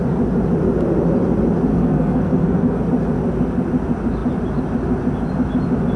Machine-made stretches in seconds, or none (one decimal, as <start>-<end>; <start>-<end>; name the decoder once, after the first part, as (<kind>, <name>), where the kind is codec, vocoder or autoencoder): 1.7-2.8 (codec, SNAC)